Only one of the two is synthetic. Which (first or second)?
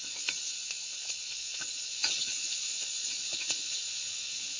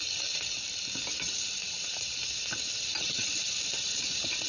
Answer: first